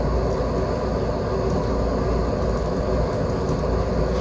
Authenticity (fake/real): real